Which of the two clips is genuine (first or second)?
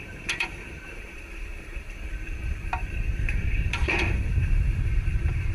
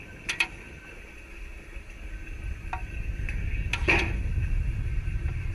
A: second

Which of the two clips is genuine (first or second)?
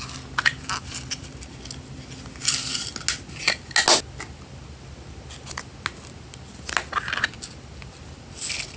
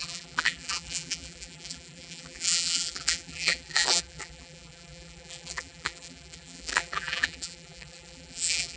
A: first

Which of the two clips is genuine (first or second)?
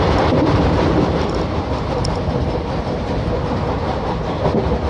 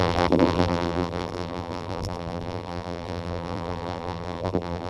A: first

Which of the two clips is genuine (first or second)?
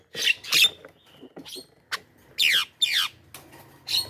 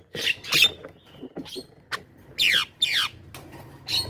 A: first